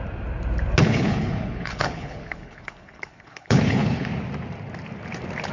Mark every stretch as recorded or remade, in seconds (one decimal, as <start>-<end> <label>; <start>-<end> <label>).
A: 0.0-0.8 recorded; 0.8-4.1 remade; 4.1-5.5 recorded